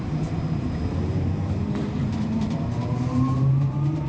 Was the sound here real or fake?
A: fake